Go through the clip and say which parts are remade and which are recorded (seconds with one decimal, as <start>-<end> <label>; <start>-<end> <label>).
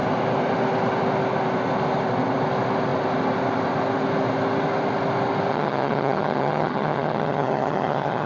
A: 0.0-5.5 recorded; 5.5-8.3 remade